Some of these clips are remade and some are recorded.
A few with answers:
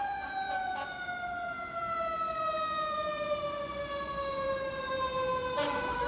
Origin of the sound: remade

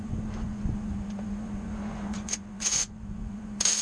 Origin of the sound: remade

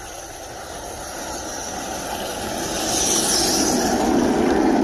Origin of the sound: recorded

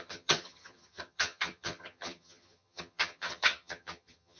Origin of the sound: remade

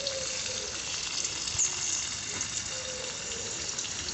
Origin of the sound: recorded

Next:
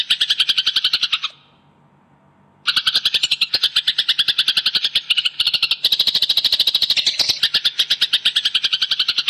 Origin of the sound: recorded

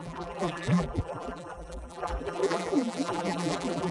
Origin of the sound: remade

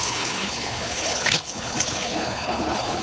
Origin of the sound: remade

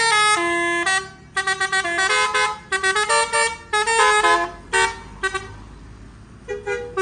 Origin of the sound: recorded